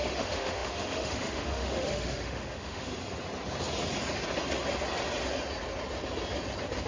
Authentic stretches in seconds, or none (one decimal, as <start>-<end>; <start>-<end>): 2.9-6.9